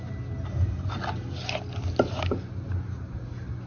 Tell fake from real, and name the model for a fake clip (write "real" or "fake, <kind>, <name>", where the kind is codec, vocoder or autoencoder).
real